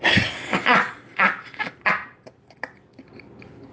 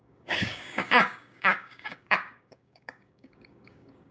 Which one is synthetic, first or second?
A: second